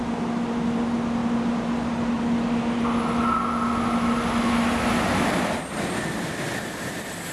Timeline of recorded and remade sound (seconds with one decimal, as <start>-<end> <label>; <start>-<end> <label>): 0.0-7.3 recorded